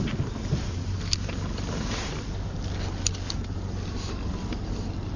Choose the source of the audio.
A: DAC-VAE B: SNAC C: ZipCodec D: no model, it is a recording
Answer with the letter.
D